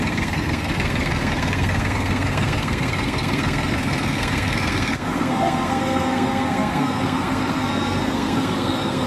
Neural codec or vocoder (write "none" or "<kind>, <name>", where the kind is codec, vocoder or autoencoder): codec, SNAC